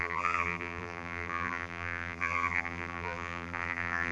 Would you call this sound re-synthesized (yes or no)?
yes